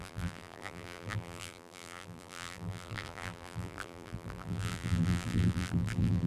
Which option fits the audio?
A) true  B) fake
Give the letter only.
B